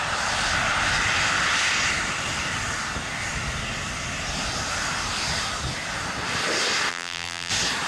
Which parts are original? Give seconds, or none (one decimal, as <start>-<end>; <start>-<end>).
0.0-6.9; 7.5-7.9